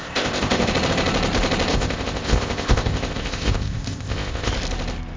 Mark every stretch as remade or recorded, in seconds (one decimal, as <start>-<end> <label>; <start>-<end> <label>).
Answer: 0.0-0.7 remade; 0.7-1.7 recorded; 1.7-4.5 remade; 4.5-5.2 recorded